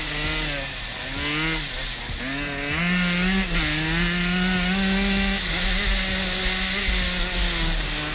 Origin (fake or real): real